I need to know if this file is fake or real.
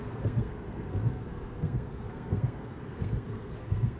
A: fake